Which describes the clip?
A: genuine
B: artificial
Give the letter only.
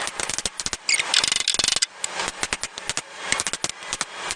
A